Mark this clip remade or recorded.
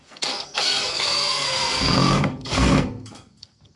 remade